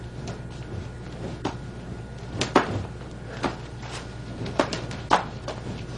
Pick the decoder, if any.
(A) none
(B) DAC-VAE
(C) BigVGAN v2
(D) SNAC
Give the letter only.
A